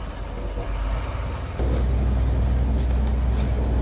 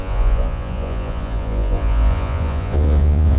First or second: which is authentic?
first